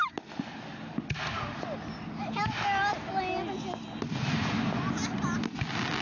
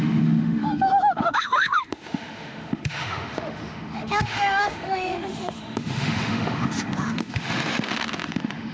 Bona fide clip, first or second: first